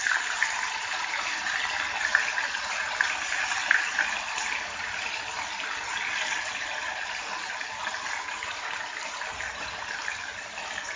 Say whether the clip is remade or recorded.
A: recorded